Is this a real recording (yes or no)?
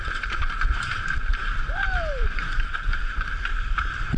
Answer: no